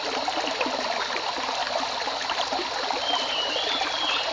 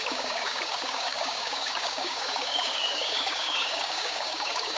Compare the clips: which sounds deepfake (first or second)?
second